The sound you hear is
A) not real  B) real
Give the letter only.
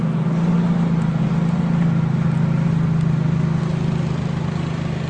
B